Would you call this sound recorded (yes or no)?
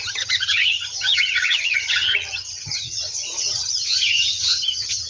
no